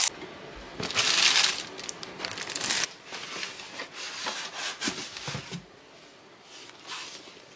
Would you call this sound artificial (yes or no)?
no